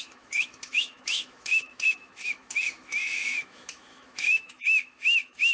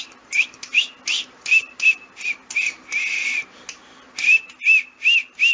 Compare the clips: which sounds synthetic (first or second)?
first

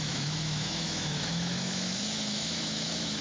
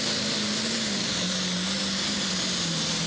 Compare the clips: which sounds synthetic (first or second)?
first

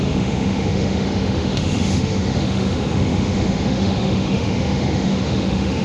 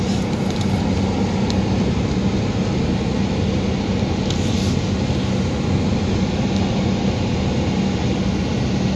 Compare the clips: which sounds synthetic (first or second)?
first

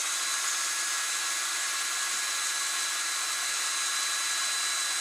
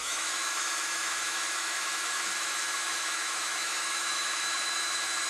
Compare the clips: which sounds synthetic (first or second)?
second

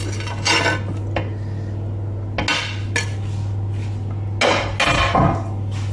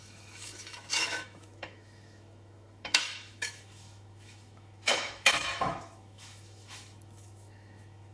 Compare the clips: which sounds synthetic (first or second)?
second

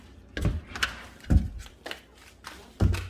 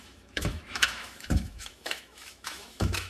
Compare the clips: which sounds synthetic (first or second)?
second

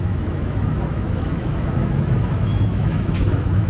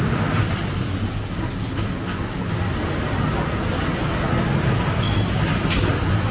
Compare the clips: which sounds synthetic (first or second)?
first